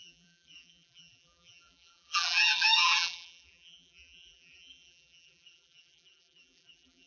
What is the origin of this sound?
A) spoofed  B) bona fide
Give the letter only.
A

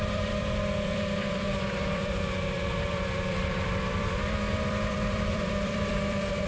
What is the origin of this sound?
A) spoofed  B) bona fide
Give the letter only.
A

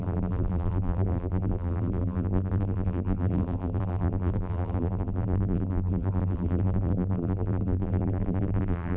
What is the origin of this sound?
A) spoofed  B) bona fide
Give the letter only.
A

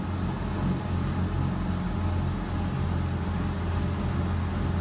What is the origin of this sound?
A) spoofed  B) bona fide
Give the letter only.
B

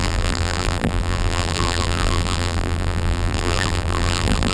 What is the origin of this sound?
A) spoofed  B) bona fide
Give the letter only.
A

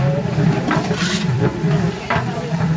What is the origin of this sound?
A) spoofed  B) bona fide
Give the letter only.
A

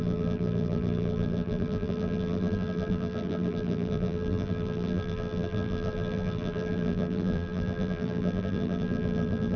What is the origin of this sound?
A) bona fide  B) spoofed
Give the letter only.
B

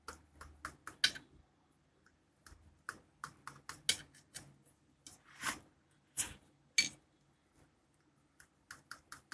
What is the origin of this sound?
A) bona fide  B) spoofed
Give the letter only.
A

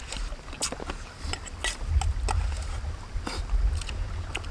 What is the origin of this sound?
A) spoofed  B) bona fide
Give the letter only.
B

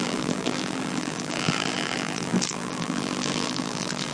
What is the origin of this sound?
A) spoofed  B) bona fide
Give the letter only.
A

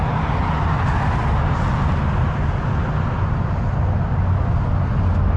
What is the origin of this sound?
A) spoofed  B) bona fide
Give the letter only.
B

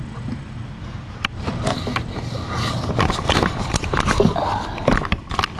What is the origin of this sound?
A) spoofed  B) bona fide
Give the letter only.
B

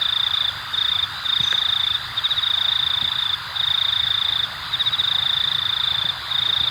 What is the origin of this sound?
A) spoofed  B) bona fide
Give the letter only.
B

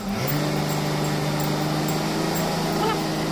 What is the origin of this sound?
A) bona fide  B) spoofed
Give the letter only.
A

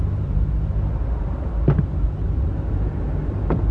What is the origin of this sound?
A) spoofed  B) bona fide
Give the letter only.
A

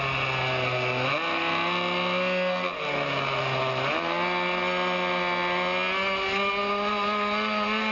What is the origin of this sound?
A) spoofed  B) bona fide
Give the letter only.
B